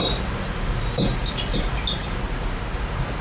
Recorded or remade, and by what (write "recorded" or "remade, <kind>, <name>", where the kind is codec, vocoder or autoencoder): recorded